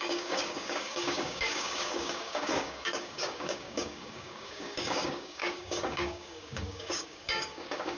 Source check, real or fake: fake